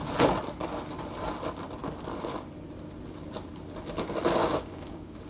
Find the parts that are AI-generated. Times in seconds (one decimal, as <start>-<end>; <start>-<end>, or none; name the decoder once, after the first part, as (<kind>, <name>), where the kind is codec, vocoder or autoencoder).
4.4-5.3 (codec, DAC)